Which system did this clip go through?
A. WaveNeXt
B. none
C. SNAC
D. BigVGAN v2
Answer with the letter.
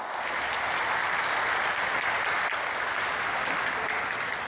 B